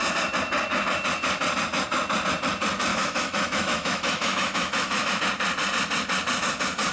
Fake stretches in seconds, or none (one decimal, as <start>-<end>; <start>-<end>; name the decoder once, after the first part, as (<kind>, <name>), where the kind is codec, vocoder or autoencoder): 2.9-5.2 (autoencoder, DAC-VAE)